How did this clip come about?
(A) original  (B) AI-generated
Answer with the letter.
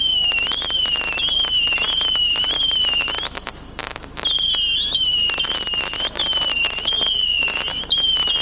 A